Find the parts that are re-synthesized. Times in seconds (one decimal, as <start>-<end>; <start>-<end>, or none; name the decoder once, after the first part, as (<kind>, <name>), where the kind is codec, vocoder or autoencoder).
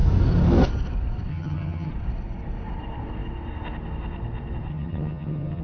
1.3-1.9 (vocoder, HiFi-GAN); 4.7-5.6